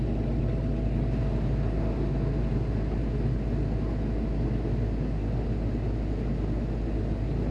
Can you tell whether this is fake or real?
real